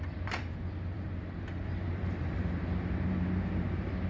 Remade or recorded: remade